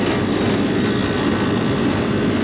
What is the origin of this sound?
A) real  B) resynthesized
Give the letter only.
A